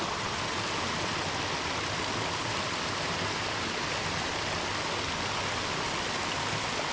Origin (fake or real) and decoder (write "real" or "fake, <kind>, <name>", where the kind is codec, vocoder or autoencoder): real